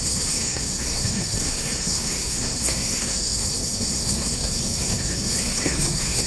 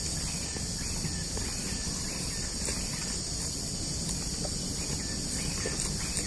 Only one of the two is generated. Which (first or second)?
first